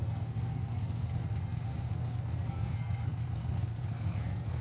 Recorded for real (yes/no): no